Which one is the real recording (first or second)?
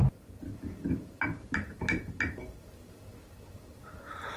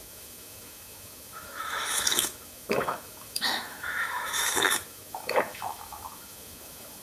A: first